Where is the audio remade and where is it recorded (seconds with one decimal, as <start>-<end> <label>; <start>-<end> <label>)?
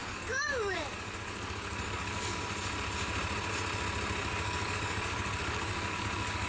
0.0-2.4 remade; 2.4-4.2 recorded; 4.2-6.5 remade